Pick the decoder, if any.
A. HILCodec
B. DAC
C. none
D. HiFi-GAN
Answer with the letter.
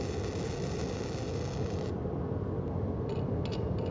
C